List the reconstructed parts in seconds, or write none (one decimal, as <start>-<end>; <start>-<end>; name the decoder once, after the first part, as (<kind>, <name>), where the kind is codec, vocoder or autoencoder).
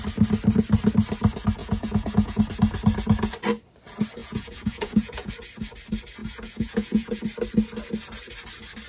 1.6-2.4 (vocoder, Vocos); 4.2-5.3; 6.2-7.2